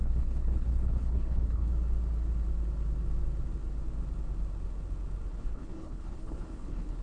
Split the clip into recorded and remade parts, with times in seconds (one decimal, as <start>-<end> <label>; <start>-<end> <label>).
0.0-1.7 remade; 1.7-5.3 recorded; 5.3-7.0 remade